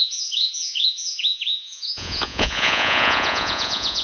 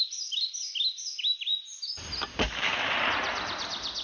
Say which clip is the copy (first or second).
first